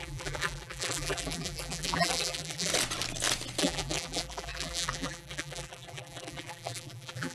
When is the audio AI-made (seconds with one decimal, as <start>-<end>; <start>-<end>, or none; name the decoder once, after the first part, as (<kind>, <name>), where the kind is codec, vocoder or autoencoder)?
0.0-2.7 (vocoder, BigVGAN v2); 3.6-7.3